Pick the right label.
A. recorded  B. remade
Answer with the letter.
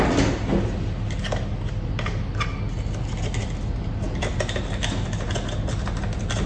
A